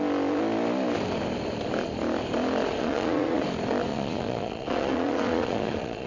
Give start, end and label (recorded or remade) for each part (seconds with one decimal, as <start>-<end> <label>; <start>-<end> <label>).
0.0-2.8 recorded; 2.8-3.4 remade; 3.4-3.9 recorded; 3.9-6.1 remade